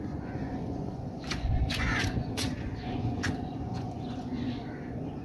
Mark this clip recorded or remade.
remade